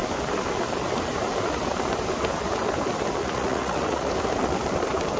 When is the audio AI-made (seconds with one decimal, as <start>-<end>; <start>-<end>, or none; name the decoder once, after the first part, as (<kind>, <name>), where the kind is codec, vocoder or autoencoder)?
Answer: 3.2-4.1 (vocoder, Vocos)